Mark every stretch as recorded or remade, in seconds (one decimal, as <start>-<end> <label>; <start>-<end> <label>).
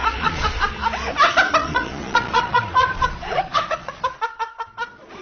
0.0-0.6 remade; 0.6-1.6 recorded; 1.6-3.9 remade; 3.9-5.2 recorded